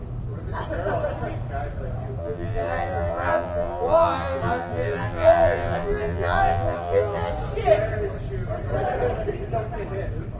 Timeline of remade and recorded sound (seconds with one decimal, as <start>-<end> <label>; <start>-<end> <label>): 0.0-2.2 recorded; 2.2-7.3 remade; 7.3-10.4 recorded